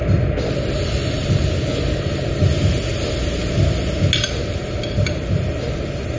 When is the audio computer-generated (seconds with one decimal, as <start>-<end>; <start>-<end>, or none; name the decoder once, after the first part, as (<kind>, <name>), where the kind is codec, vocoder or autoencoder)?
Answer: none